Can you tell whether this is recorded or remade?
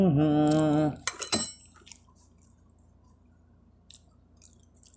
recorded